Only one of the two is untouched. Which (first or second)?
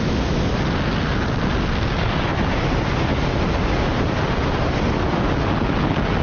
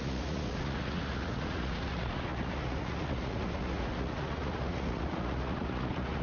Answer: first